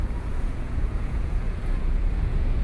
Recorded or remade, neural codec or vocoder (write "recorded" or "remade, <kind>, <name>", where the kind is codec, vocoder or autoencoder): remade, vocoder, Vocos